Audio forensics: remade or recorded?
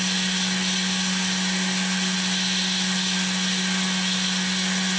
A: recorded